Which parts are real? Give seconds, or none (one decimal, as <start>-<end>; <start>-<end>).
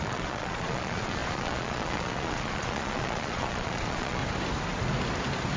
4.2-5.6